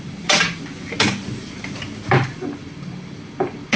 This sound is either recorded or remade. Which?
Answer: recorded